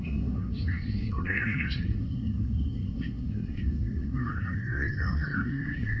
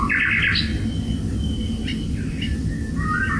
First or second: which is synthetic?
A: first